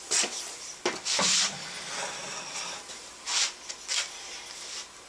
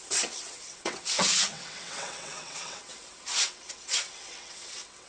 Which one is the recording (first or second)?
first